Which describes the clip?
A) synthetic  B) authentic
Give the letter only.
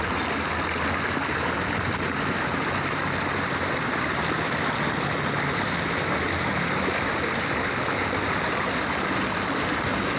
B